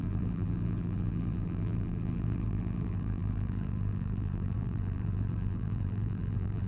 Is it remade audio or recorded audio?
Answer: remade